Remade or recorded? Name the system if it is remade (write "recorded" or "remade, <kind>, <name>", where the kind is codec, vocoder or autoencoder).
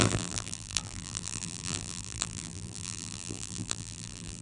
remade, vocoder, BigVGAN v2